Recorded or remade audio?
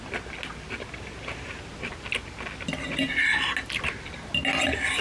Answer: recorded